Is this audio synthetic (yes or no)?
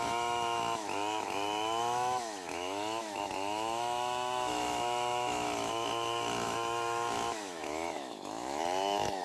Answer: yes